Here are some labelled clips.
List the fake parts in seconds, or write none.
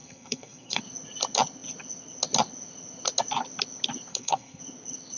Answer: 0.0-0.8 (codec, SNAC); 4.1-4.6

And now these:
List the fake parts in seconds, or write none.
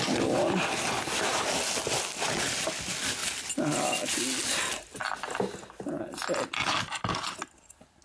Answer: none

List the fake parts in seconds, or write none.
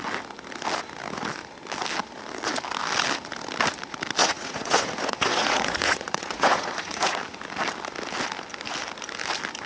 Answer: 4.2-7.2 (vocoder, Vocos)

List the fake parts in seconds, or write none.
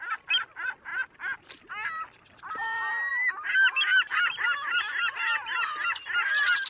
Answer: none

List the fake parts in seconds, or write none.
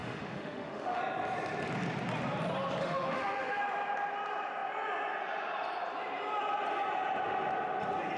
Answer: 0.0-1.0 (autoencoder, DAC-VAE); 2.8-3.6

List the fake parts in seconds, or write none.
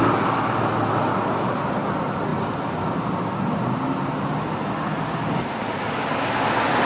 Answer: none